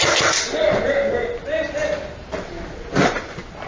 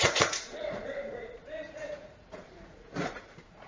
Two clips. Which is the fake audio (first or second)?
second